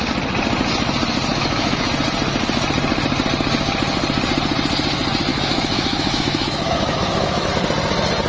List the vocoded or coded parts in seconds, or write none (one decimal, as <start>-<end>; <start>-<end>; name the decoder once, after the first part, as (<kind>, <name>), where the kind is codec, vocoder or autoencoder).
1.3-1.9 (autoencoder, DAC-VAE); 5.3-7.5

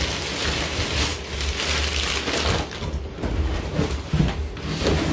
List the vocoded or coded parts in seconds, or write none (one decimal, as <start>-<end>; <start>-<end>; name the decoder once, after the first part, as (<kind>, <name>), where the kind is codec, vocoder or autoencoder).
none